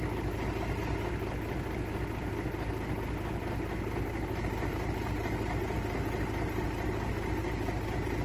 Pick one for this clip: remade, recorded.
recorded